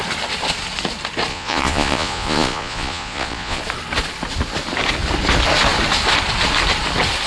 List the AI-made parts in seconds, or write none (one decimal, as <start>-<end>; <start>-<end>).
1.3-3.6